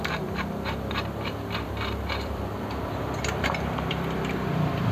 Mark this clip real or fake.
fake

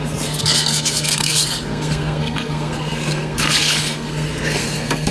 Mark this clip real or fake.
fake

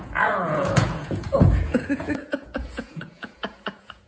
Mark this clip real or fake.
fake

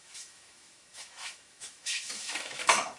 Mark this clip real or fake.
fake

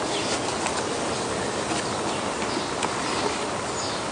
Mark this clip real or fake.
real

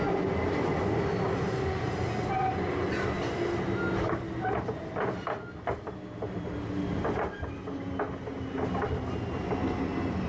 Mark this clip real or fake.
real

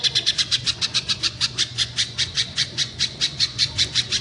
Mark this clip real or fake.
fake